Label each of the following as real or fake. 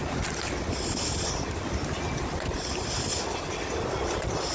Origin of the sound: real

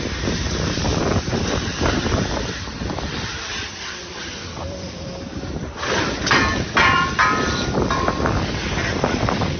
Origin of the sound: fake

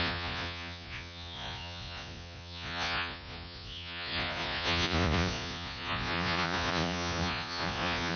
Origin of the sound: fake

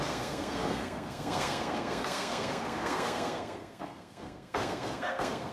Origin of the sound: fake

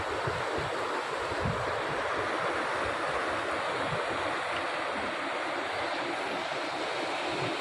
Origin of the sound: real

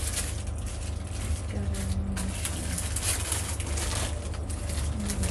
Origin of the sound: real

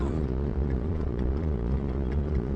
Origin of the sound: fake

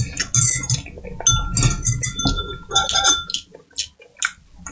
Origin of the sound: real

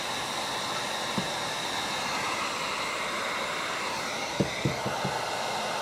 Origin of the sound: real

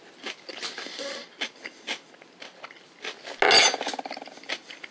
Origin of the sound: real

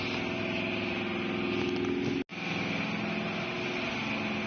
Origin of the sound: real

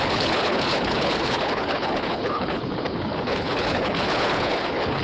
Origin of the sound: fake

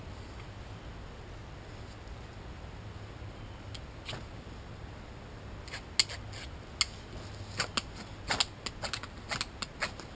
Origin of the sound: real